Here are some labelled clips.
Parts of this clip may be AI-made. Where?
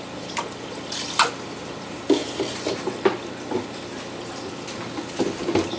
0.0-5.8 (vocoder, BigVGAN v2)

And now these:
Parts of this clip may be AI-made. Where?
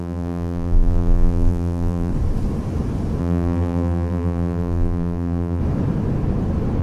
0.0-2.1 (vocoder, BigVGAN v2); 3.2-5.6